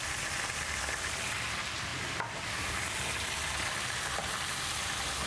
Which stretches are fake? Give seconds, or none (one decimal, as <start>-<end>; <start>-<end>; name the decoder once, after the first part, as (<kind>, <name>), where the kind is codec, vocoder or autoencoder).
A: none